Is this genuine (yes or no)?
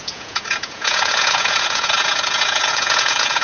no